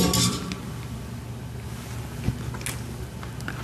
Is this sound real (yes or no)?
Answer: yes